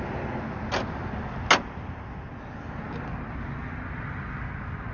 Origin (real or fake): real